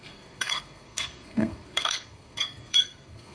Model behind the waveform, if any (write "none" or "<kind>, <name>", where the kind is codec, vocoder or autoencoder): codec, SNAC